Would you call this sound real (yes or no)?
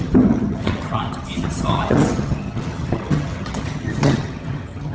no